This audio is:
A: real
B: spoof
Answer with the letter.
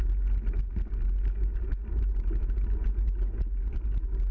A